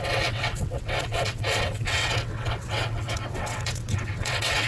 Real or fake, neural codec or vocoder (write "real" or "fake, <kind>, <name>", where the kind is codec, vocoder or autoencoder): fake, vocoder, WaveNeXt